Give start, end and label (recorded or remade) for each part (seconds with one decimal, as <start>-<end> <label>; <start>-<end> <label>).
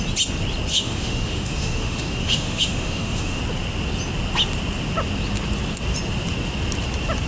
0.0-0.7 recorded; 0.7-3.4 remade; 3.4-7.3 recorded